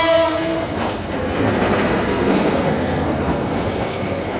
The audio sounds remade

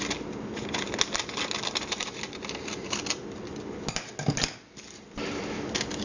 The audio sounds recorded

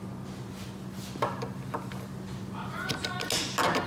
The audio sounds recorded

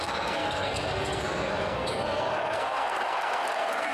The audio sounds remade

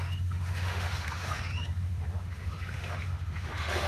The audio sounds remade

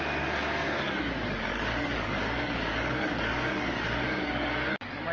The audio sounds remade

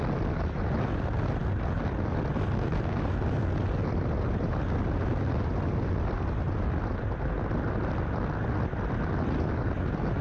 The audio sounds recorded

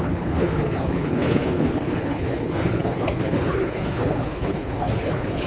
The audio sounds remade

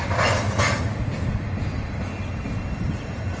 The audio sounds recorded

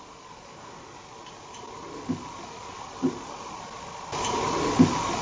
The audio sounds recorded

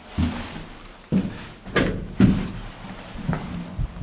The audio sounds recorded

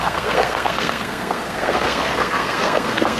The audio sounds remade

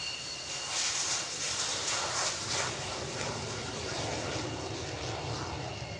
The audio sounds recorded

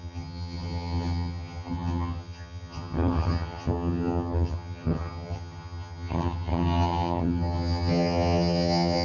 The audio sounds remade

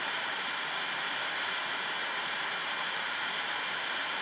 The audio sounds remade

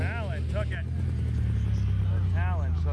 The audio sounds recorded